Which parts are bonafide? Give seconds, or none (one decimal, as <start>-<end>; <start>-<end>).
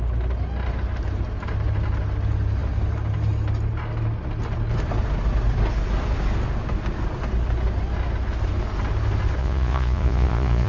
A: 0.0-9.4